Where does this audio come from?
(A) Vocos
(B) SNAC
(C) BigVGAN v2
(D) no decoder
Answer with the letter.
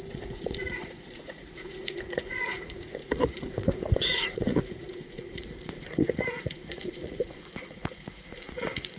A